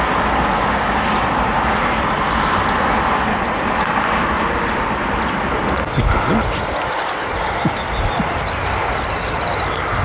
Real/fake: real